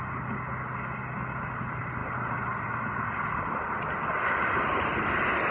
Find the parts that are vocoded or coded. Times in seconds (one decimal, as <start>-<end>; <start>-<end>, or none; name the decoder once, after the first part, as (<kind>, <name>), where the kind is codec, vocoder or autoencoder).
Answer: none